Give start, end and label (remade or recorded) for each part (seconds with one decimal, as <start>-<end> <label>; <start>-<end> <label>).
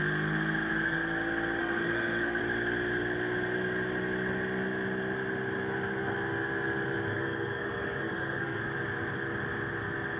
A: 0.0-1.6 recorded; 1.6-2.4 remade; 2.4-7.1 recorded; 7.1-8.6 remade; 8.6-10.2 recorded